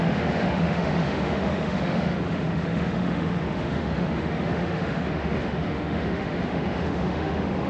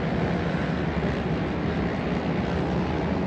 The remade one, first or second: first